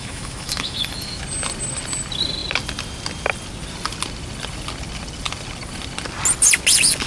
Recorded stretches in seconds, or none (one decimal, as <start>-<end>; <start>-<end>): 1.2-7.1